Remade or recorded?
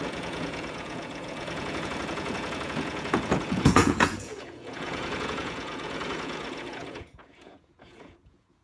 remade